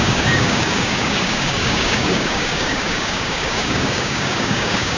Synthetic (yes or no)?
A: yes